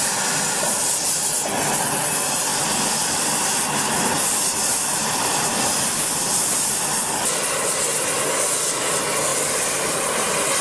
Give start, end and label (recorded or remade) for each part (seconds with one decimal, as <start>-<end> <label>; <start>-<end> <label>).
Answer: 0.0-2.5 recorded; 2.5-7.3 remade; 7.3-7.9 recorded; 7.9-8.4 remade; 8.4-9.3 recorded; 9.3-10.1 remade; 10.1-10.6 recorded